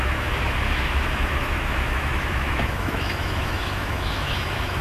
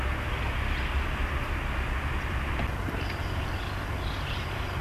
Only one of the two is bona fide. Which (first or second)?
second